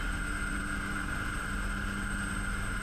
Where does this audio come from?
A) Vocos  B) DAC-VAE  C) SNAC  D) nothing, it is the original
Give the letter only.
D